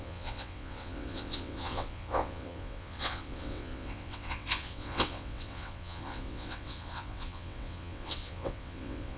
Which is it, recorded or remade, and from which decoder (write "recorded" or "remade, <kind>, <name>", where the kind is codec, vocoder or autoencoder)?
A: remade, vocoder, WaveNeXt